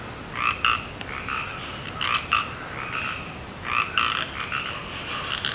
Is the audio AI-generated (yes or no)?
no